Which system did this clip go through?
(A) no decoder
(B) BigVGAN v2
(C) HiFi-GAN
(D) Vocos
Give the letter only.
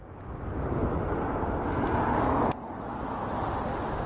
A